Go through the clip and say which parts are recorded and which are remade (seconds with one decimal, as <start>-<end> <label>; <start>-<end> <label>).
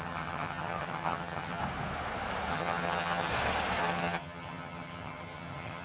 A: 0.0-1.6 remade; 1.6-2.5 recorded; 2.5-3.3 remade; 3.3-3.8 recorded; 3.8-5.8 remade